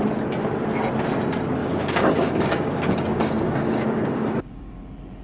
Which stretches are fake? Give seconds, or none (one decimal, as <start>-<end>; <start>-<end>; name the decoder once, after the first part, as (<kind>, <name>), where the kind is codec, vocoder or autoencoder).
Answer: 1.6-4.7 (codec, DAC)